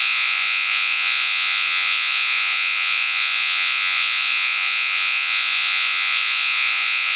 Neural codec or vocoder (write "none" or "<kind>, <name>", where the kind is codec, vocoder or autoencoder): vocoder, Vocos